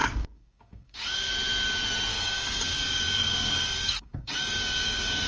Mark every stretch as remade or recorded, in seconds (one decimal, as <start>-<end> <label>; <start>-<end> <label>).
0.0-1.3 remade; 1.3-2.1 recorded; 2.1-5.3 remade